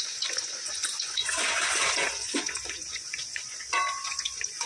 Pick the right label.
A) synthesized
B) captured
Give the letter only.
A